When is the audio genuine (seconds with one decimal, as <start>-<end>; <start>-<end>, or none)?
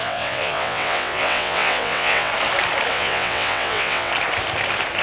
2.3-2.9; 4.1-5.0